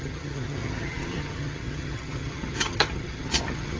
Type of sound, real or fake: fake